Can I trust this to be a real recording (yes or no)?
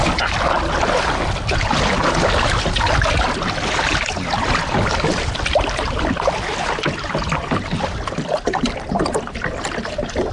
yes